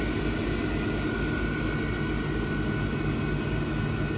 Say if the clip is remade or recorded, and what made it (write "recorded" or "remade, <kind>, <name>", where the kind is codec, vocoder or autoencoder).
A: recorded